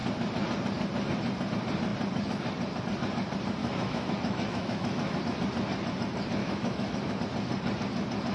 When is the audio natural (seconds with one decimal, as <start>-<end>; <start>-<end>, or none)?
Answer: 0.0-3.6; 5.2-6.4; 7.2-8.3